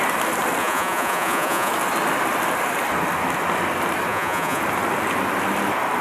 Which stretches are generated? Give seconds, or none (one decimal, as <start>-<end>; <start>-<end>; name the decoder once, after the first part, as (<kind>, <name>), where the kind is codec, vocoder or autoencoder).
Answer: 0.6-1.7 (vocoder, Vocos); 4.1-4.6